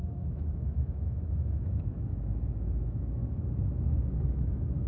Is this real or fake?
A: fake